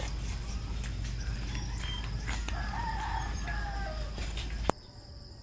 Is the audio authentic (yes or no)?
no